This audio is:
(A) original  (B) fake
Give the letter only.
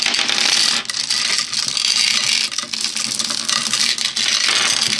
A